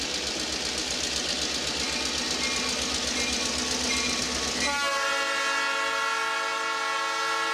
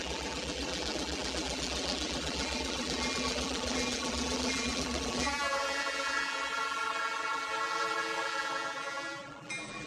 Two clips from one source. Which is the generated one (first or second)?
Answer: second